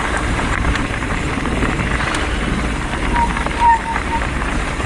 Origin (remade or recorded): remade